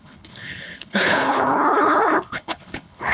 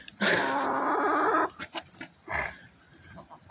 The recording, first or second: second